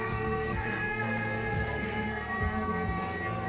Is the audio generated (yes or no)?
yes